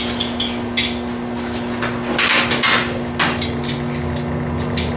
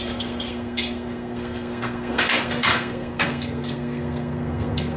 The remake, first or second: second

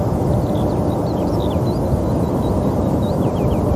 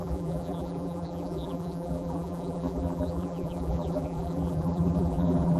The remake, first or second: second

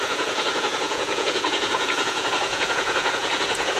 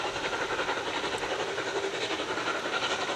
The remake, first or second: first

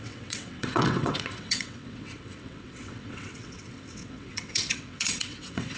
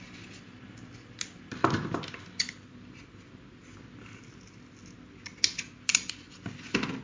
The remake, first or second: first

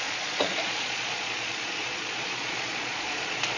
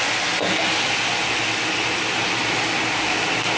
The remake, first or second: first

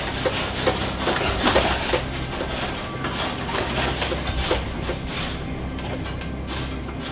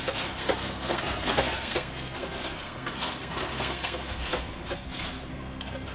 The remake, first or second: second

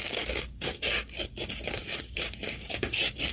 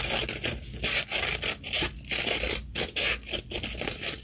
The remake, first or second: first